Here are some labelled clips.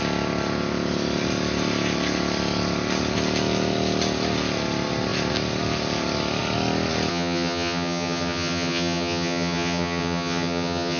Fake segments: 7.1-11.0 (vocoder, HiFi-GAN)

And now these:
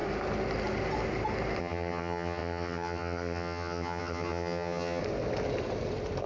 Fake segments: 1.6-5.0 (vocoder, HiFi-GAN)

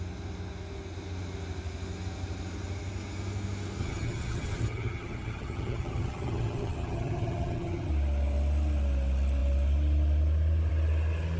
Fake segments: 3.8-7.9 (vocoder, HiFi-GAN)